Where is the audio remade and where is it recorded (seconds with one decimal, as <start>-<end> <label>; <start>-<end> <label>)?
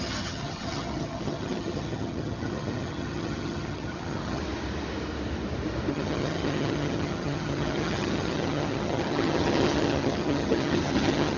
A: 0.0-4.4 remade; 4.4-5.9 recorded; 5.9-11.4 remade